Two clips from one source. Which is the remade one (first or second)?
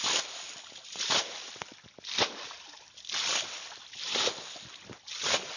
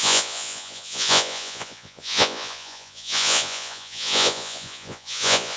second